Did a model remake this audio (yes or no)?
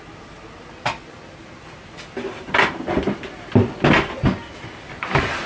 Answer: no